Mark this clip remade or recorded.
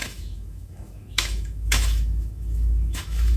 remade